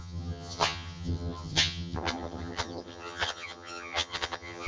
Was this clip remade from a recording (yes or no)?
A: yes